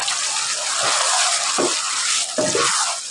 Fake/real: real